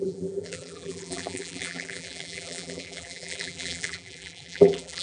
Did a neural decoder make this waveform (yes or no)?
yes